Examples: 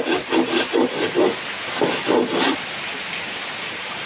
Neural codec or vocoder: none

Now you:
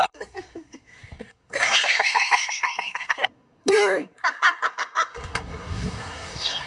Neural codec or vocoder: codec, SNAC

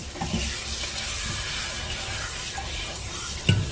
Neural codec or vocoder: none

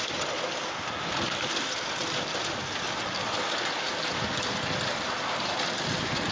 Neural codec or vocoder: none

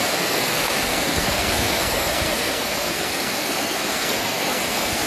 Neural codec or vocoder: codec, SNAC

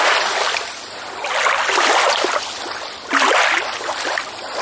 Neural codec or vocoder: none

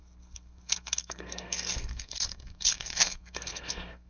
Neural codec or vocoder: codec, SNAC